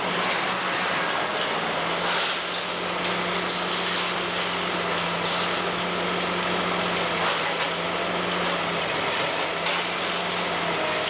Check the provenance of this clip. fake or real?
real